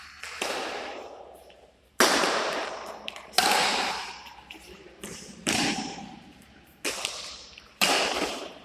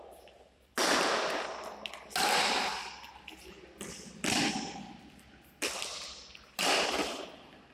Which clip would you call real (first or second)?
second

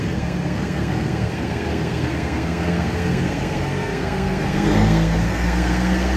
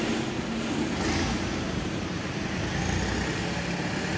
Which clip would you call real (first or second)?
second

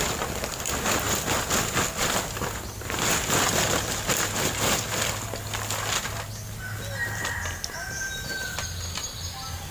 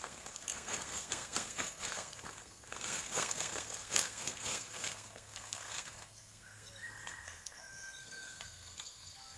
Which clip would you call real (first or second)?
first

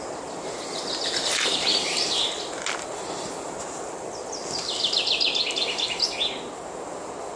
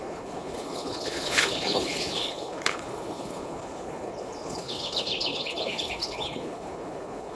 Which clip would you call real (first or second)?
first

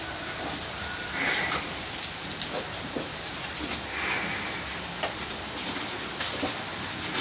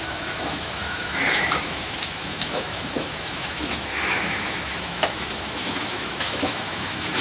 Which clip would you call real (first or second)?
first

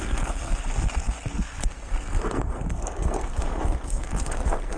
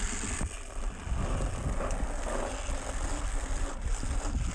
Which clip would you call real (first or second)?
second